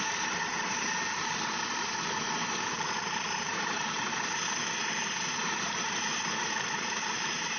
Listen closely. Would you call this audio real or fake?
fake